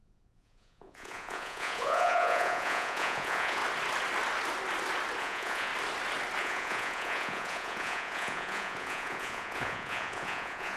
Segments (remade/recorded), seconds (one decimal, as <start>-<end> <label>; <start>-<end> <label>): 0.0-3.6 remade; 3.6-5.2 recorded; 5.2-5.7 remade; 5.7-6.4 recorded; 6.4-10.8 remade